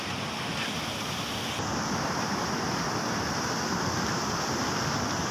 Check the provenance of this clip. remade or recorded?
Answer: recorded